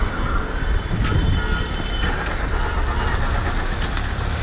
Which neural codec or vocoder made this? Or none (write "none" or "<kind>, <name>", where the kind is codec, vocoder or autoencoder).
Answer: none